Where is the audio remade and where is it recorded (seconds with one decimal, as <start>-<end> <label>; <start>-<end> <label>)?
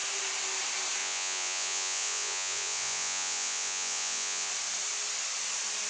0.0-1.0 recorded; 1.0-4.5 remade; 4.5-5.9 recorded